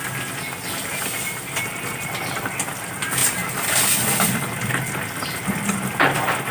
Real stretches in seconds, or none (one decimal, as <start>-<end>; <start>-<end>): 0.0-6.5